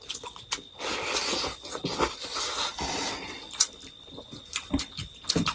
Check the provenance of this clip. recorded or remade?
recorded